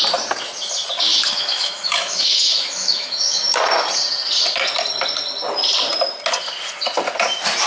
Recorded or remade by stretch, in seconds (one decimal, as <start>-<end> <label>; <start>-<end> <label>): 0.0-1.1 recorded; 1.1-3.6 remade; 3.6-7.7 recorded